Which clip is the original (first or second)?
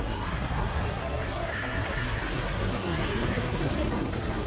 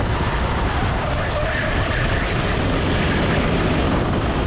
second